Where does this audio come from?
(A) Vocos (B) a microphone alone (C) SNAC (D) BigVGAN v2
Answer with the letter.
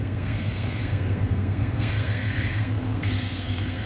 C